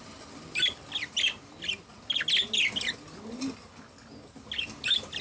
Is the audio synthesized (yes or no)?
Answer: no